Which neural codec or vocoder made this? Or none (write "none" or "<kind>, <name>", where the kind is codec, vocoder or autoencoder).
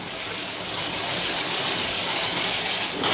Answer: codec, DAC